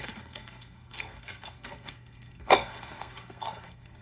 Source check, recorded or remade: remade